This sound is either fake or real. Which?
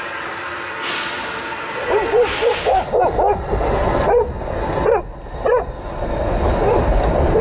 real